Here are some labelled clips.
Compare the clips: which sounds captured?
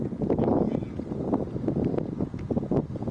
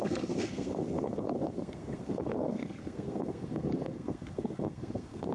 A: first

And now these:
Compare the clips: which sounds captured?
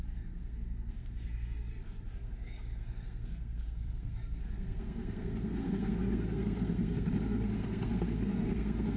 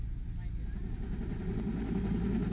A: second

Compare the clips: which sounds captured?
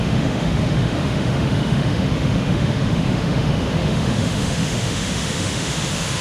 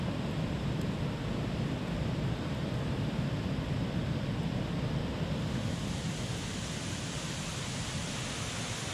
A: second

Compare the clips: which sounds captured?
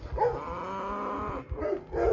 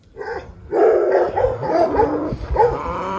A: first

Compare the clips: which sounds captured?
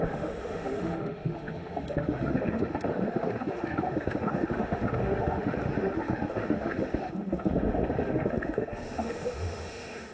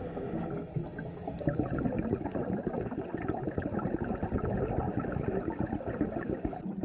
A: second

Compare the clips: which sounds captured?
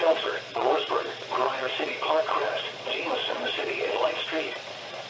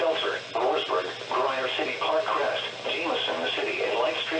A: second